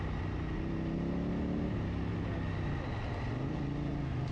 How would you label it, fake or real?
real